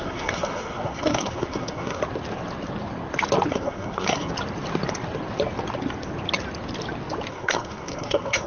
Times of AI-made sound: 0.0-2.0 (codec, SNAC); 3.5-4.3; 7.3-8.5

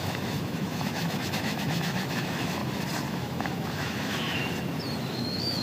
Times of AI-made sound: 0.0-2.6 (autoencoder, DAC-VAE); 3.1-4.4; 5.1-5.6